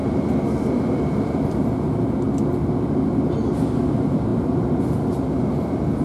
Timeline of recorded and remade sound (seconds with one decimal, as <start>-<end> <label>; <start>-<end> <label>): 0.0-1.7 remade; 1.7-4.3 recorded; 4.3-5.4 remade; 5.4-6.0 recorded

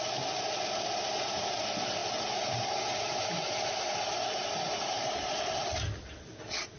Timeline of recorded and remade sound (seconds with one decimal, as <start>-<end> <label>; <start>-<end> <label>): 0.0-2.0 recorded; 2.0-5.3 remade; 5.3-6.8 recorded

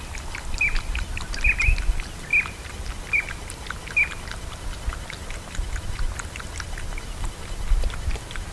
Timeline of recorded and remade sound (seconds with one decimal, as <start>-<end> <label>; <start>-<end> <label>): 0.0-8.5 recorded

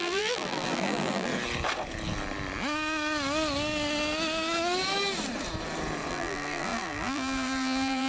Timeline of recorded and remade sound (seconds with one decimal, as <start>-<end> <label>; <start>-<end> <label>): 0.0-1.3 remade; 1.3-6.1 recorded; 6.1-8.1 remade

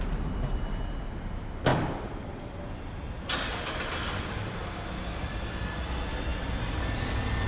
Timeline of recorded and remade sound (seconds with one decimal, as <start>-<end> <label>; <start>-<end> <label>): 0.0-1.7 recorded; 1.7-2.6 remade; 2.6-3.5 recorded; 3.5-4.4 remade; 4.4-7.5 recorded

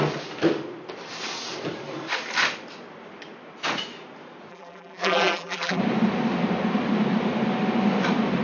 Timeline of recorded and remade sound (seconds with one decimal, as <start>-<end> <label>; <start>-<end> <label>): 0.0-4.5 recorded; 4.5-5.8 remade; 5.8-8.4 recorded